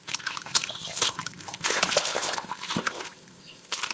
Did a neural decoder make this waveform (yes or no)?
yes